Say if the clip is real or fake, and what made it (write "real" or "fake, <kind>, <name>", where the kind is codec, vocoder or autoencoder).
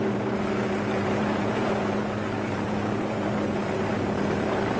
fake, vocoder, BigVGAN v2